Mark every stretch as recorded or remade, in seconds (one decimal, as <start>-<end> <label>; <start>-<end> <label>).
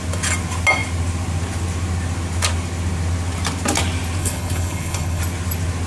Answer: 0.0-4.2 recorded; 4.2-5.2 remade; 5.2-5.9 recorded